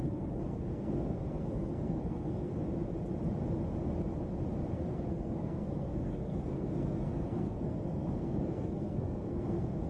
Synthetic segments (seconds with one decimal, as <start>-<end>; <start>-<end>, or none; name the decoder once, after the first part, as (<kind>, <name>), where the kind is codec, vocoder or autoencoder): 0.0-2.5 (codec, SNAC); 4.7-9.9